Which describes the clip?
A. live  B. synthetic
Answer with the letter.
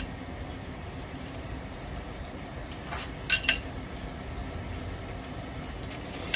A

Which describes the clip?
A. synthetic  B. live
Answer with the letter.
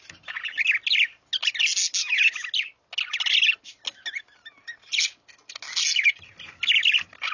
B